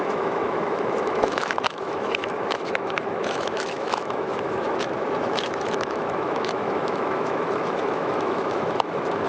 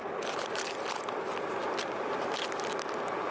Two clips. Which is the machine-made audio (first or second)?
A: first